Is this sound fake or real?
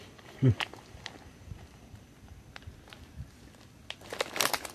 real